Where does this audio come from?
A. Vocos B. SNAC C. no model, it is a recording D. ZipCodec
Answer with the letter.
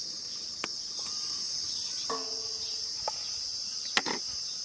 C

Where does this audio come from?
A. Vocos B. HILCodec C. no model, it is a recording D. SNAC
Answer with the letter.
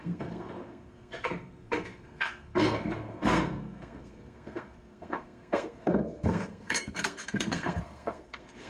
D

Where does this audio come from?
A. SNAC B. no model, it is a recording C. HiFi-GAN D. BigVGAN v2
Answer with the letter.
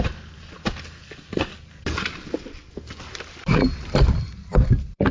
D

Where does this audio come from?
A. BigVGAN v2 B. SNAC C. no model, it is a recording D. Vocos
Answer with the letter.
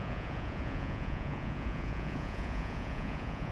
D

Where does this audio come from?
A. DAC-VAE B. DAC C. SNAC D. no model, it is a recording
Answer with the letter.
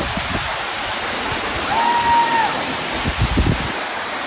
D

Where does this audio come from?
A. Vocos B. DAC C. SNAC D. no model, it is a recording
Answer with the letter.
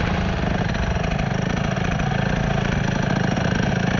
D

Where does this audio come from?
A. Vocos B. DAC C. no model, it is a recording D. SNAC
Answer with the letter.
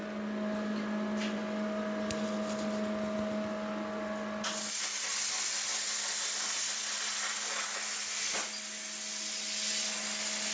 C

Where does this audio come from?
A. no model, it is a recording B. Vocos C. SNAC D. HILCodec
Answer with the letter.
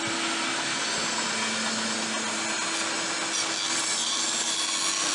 A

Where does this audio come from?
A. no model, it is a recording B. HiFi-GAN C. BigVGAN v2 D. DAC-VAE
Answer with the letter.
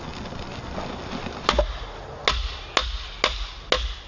A